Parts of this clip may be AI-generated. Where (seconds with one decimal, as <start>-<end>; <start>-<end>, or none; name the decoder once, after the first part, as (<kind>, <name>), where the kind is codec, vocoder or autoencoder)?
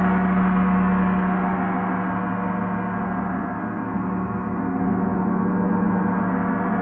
none